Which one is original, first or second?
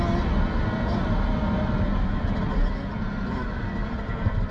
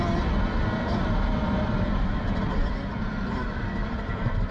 first